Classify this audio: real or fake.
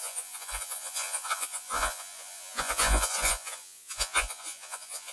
fake